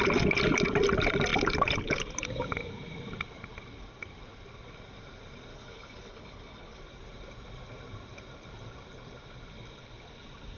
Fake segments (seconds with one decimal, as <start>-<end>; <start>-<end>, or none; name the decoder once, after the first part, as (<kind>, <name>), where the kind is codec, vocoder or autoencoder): 5.5-6.8 (codec, HILCodec)